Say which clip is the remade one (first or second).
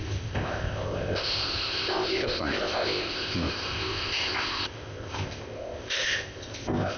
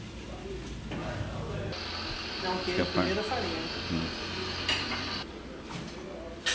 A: first